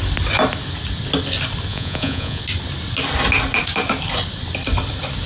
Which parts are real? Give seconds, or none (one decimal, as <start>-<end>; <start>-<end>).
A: 0.0-1.7; 2.4-5.3